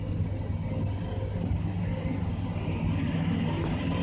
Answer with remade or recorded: recorded